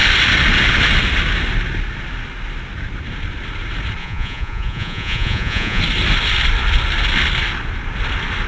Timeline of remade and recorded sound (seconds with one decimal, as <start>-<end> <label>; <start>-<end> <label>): 0.0-4.0 recorded; 4.0-5.8 remade; 5.8-8.5 recorded